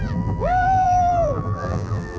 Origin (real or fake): fake